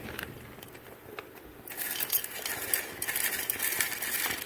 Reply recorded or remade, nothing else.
recorded